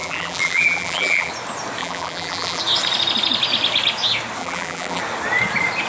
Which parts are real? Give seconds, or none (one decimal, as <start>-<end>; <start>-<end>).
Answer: 1.3-1.8; 2.6-4.4; 5.0-5.9